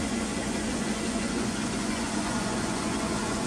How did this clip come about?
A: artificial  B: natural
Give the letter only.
A